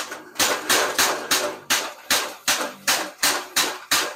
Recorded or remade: remade